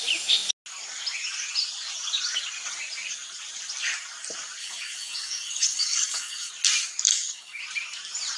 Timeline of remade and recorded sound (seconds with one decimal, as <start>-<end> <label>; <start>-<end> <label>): 0.0-4.6 recorded; 4.6-6.5 remade; 6.5-7.1 recorded; 7.1-7.6 remade; 7.6-8.4 recorded